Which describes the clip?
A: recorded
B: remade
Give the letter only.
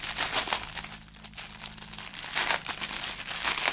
A